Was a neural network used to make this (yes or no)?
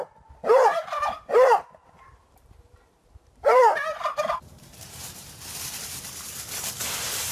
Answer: yes